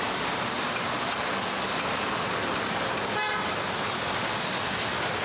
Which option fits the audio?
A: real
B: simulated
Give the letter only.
A